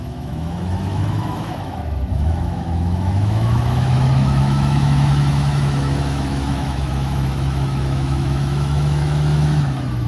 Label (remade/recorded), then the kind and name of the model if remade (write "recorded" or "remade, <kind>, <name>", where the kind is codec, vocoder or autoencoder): remade, autoencoder, DAC-VAE